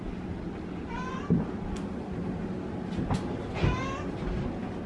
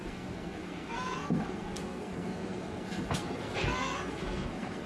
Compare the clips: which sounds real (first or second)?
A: first